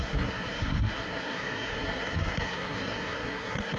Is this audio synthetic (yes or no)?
yes